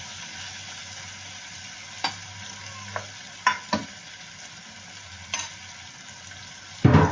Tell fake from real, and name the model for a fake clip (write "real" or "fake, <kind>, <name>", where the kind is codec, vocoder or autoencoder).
real